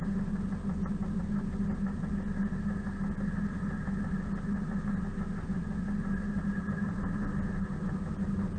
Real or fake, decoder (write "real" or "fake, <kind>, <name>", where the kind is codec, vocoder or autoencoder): real